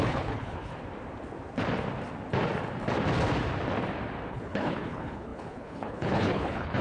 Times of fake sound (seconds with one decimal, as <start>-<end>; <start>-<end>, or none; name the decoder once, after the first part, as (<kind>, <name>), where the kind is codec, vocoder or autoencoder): 0.0-0.7 (codec, HILCodec); 4.3-6.8